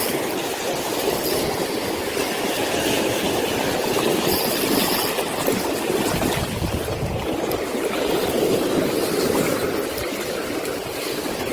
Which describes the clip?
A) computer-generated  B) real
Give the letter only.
B